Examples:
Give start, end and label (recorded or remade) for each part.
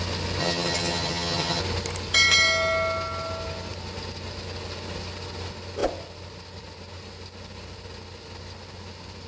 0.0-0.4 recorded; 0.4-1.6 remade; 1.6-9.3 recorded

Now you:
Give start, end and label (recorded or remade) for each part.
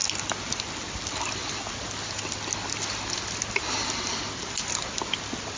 0.0-5.6 recorded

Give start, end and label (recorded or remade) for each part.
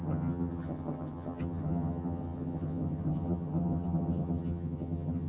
0.0-5.3 remade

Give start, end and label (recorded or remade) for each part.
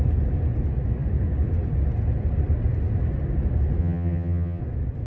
0.0-3.8 recorded; 3.8-4.6 remade; 4.6-5.1 recorded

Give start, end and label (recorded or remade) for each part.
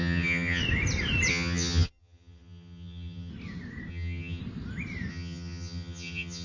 0.0-0.6 remade; 0.6-1.3 recorded; 1.3-3.3 remade; 3.3-3.9 recorded; 3.9-4.4 remade; 4.4-5.1 recorded; 5.1-6.4 remade